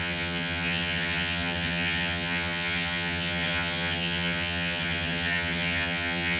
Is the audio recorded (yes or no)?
no